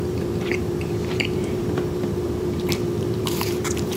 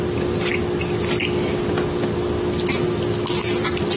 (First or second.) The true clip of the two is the second